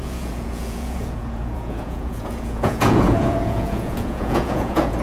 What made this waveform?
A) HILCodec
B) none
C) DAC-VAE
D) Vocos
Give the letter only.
D